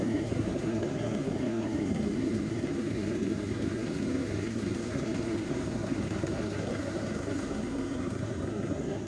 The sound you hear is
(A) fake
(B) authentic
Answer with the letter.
A